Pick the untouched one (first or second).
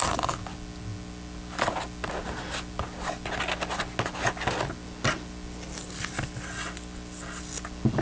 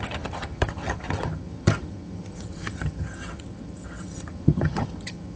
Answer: first